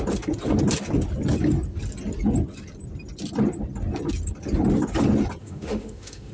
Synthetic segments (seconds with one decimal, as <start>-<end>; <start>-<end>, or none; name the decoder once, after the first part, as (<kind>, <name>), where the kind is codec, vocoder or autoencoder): 5.4-6.3 (autoencoder, DAC-VAE)